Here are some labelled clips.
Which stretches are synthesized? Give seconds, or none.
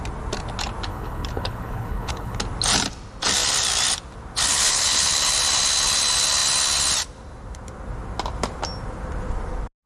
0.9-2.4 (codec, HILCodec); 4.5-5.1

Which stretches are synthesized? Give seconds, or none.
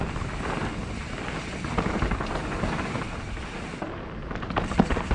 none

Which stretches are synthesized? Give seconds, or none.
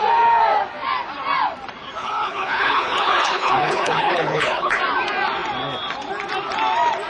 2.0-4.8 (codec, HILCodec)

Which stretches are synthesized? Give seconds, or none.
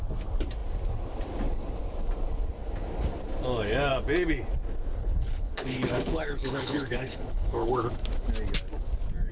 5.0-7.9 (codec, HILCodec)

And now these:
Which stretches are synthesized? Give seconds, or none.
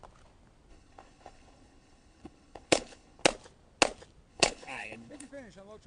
0.7-3.2 (codec, HILCodec); 4.3-5.3